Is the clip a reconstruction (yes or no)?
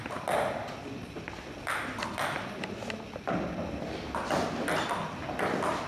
no